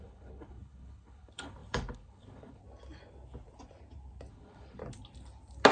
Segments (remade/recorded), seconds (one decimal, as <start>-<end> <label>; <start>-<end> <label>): 0.0-2.6 remade; 2.6-4.3 recorded; 4.3-4.8 remade; 4.8-5.7 recorded